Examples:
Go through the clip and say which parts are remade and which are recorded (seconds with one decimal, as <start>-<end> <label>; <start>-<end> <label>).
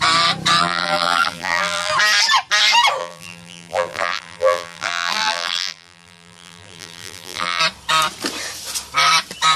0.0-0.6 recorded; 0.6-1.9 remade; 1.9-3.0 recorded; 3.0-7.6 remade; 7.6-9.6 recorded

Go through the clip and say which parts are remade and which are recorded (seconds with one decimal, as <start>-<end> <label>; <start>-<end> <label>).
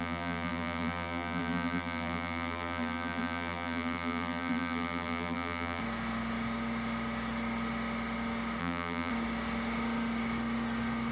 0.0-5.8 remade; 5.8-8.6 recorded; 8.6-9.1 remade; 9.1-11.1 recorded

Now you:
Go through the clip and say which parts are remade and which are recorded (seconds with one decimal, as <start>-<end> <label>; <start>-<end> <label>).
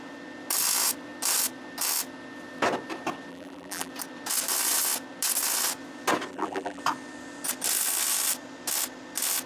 0.0-3.3 recorded; 3.3-3.9 remade; 3.9-6.3 recorded; 6.3-6.8 remade; 6.8-9.5 recorded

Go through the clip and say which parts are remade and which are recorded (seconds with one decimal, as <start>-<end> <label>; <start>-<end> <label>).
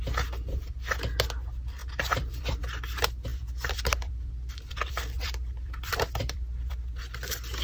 0.0-1.8 recorded; 1.8-2.6 remade; 2.6-3.3 recorded; 3.3-6.7 remade; 6.7-7.6 recorded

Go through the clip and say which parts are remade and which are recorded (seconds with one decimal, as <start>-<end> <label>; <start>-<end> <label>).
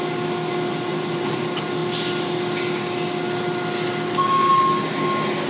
0.0-0.9 recorded; 0.9-1.4 remade; 1.4-5.5 recorded